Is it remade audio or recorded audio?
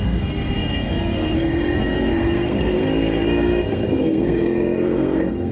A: remade